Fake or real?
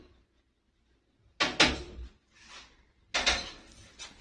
real